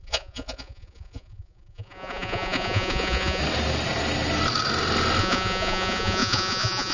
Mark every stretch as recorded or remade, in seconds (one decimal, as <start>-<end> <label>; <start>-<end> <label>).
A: 0.0-3.4 remade; 3.4-5.2 recorded; 5.2-6.9 remade